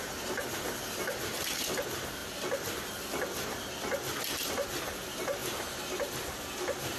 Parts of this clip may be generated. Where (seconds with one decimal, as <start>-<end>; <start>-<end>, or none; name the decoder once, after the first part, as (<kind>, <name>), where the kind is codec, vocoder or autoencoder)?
2.2-4.2 (vocoder, BigVGAN v2)